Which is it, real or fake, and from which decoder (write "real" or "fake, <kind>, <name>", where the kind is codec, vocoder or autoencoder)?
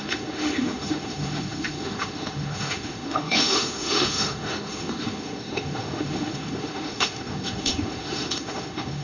fake, autoencoder, DAC-VAE